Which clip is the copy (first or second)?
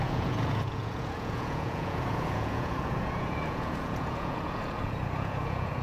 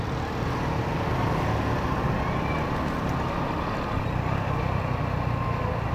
first